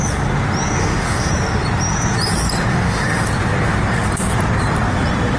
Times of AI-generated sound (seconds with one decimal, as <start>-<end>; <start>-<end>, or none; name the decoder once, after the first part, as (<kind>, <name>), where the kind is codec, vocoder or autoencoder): 0.8-1.3 (autoencoder, DAC-VAE); 2.7-3.3

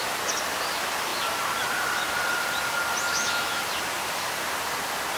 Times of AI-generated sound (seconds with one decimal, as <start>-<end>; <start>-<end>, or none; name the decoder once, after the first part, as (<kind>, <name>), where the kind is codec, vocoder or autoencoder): 3.1-3.6 (autoencoder, DAC-VAE)

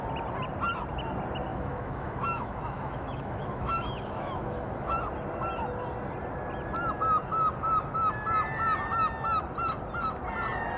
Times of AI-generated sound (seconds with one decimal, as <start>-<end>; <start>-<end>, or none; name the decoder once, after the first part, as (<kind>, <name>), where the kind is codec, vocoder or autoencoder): 1.5-4.9 (autoencoder, DAC-VAE)

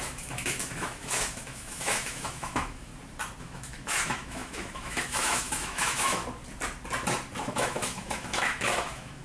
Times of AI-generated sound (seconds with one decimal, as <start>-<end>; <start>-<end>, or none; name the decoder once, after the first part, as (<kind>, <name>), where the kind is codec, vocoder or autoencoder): 0.0-2.9 (autoencoder, DAC-VAE); 3.4-6.2; 7.4-9.2

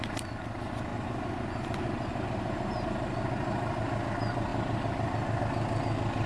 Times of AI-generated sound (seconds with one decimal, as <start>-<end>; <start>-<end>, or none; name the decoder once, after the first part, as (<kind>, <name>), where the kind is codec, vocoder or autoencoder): none

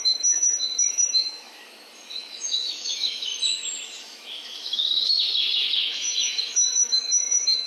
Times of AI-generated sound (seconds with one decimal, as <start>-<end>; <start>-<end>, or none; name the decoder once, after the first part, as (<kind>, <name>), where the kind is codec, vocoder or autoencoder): 0.0-3.3 (autoencoder, DAC-VAE); 4.0-7.7

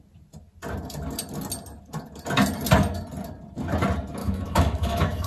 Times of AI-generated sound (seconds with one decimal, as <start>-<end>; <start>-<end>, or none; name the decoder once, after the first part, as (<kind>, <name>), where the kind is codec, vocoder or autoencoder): 4.2-5.3 (autoencoder, DAC-VAE)

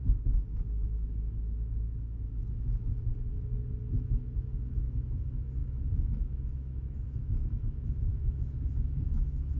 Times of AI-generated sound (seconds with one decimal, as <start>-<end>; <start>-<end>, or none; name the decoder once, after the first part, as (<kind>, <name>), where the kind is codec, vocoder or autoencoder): 0.0-3.1 (autoencoder, DAC-VAE); 3.7-9.6